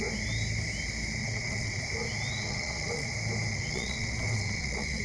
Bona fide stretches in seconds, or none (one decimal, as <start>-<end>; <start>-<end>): 0.0-1.2; 1.8-2.3; 3.1-3.5